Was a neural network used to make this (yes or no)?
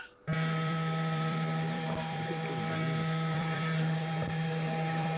yes